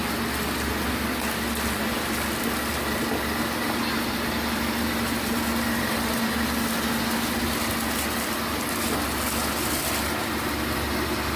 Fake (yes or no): no